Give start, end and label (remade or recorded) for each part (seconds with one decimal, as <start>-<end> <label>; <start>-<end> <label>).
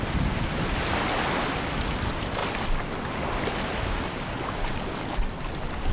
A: 0.0-5.9 recorded